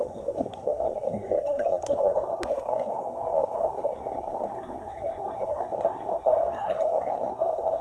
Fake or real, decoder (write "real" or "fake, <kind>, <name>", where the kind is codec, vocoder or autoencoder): fake, codec, SNAC